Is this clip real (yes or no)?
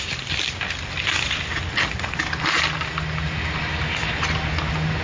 yes